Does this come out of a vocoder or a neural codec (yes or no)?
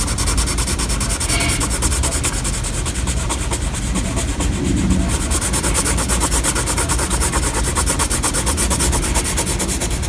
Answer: no